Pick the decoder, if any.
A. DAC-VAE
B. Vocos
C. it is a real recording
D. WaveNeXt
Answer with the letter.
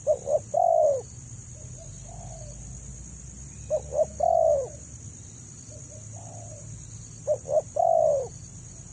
C